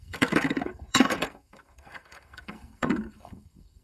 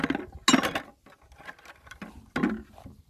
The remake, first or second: first